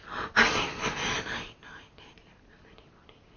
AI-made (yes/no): no